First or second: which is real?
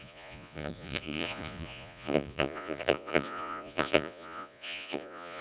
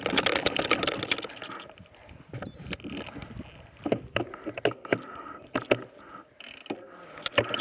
second